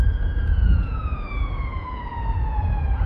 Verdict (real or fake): fake